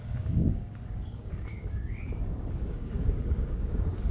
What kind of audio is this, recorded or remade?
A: remade